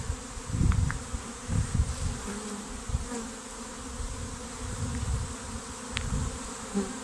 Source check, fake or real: real